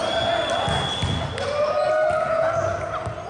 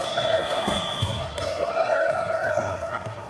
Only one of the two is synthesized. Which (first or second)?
second